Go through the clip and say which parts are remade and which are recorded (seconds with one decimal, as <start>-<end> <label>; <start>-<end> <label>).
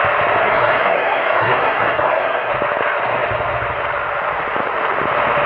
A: 0.0-0.4 recorded; 0.4-2.5 remade; 2.5-5.5 recorded